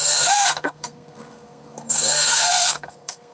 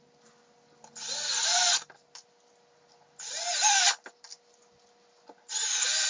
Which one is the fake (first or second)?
first